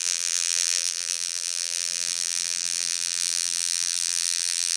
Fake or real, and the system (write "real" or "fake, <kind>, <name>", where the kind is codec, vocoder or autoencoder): fake, vocoder, BigVGAN v2